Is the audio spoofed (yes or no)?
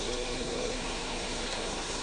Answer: yes